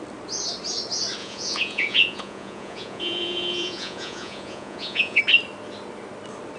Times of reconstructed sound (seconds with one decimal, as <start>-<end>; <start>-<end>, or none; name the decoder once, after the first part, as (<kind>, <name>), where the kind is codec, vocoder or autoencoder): 1.2-5.2 (vocoder, Vocos)